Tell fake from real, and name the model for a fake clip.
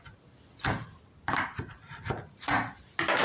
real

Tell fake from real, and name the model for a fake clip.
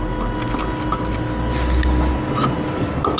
real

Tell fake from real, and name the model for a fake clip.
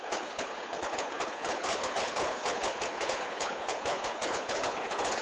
fake, codec, HILCodec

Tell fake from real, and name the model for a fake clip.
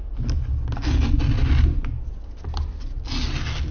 real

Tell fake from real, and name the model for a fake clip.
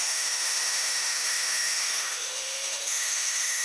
fake, autoencoder, DAC-VAE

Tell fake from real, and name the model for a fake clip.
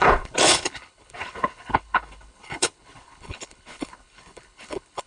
fake, codec, HILCodec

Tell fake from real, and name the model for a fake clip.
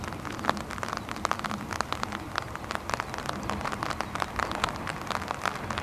real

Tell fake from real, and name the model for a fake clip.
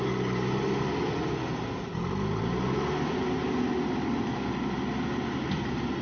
real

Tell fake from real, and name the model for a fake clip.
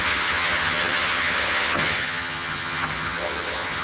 fake, vocoder, HiFi-GAN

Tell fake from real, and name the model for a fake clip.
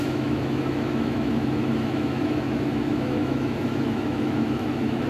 fake, autoencoder, DAC-VAE